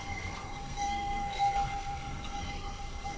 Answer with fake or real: fake